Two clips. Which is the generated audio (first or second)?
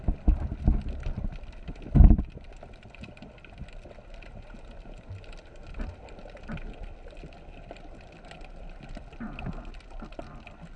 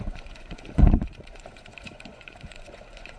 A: second